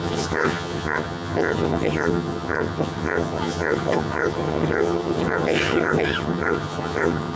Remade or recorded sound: remade